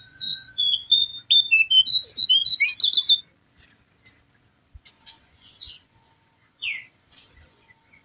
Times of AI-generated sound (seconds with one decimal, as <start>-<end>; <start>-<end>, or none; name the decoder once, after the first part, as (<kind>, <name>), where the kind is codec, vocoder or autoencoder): 0.0-1.1 (vocoder, Vocos); 4.9-8.0